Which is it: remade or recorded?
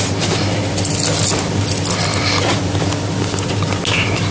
recorded